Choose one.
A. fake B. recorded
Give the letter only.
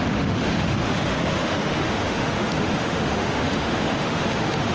A